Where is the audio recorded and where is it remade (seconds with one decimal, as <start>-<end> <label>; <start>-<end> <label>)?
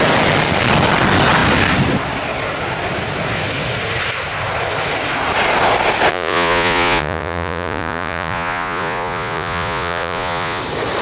0.0-6.1 recorded; 6.1-10.6 remade; 10.6-11.0 recorded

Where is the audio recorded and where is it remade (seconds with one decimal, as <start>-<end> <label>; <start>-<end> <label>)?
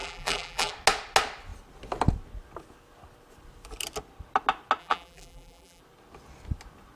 0.0-0.7 remade; 0.7-4.8 recorded; 4.8-5.8 remade; 5.8-7.0 recorded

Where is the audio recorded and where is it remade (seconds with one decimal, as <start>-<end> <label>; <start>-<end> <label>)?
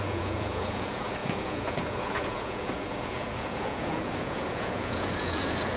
0.0-5.8 remade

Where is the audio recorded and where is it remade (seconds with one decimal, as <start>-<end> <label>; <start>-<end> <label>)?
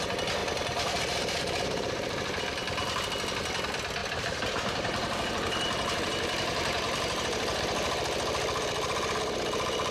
0.0-0.4 recorded; 0.4-2.4 remade; 2.4-4.0 recorded; 4.0-7.6 remade; 7.6-9.9 recorded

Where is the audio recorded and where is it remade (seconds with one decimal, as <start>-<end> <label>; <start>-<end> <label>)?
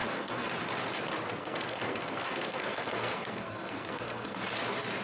0.0-0.5 remade; 0.5-1.4 recorded; 1.4-4.4 remade; 4.4-5.0 recorded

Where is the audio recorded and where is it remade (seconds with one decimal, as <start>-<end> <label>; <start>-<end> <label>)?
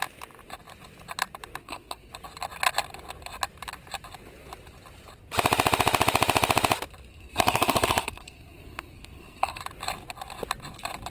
0.0-1.6 recorded; 1.6-2.1 remade; 2.1-7.1 recorded; 7.1-9.6 remade; 9.6-11.1 recorded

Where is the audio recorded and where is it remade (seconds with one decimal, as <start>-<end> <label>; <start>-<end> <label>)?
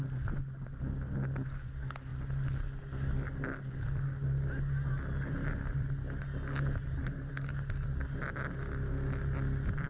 0.0-9.9 recorded